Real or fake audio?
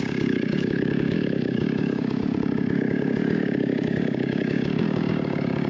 fake